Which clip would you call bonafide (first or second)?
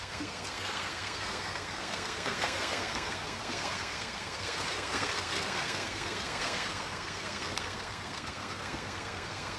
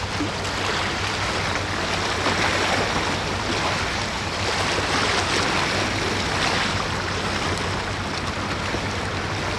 second